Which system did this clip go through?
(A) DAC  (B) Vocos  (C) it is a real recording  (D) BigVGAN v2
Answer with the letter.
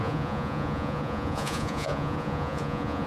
B